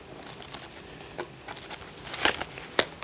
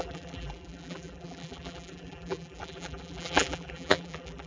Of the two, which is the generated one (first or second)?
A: second